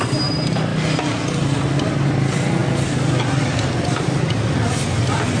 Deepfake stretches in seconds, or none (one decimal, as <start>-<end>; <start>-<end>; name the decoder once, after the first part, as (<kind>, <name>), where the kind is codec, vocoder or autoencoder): none